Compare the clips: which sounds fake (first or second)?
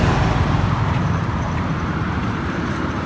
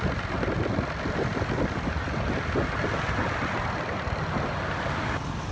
first